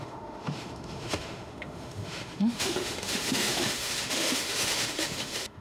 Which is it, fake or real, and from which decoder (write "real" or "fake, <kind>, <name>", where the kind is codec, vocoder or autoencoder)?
fake, autoencoder, DAC-VAE